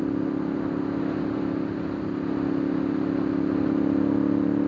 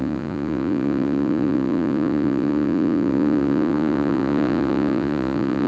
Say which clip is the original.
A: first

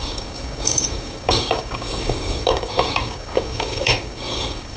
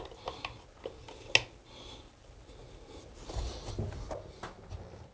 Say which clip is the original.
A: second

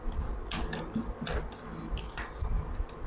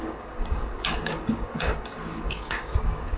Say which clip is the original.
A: first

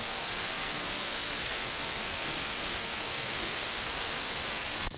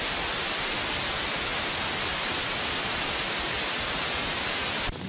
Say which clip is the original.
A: second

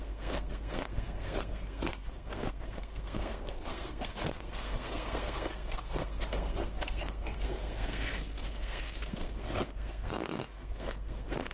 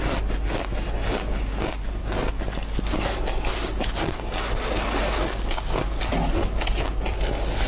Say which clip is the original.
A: second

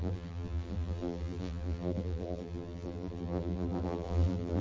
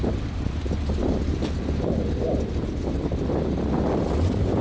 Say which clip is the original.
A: second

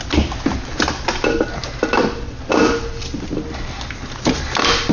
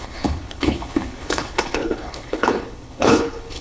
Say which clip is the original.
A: first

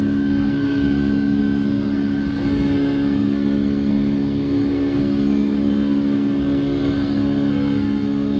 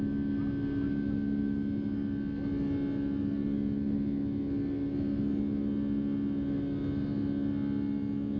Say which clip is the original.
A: second